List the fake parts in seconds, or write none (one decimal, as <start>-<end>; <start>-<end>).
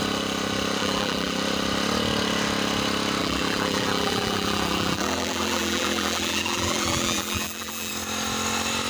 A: 0.8-1.4; 3.2-7.9